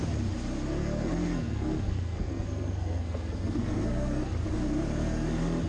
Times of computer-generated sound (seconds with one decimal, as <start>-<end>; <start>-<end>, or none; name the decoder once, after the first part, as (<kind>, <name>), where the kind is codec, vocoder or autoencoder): 0.8-4.2 (codec, SNAC)